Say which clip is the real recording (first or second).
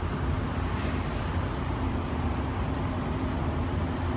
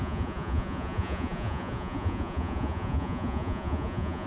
first